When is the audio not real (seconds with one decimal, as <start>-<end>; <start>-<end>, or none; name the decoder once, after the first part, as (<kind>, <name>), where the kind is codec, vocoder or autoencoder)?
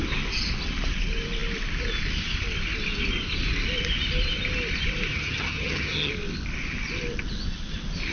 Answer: 5.1-6.1 (vocoder, HiFi-GAN)